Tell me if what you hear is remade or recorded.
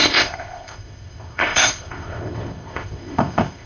remade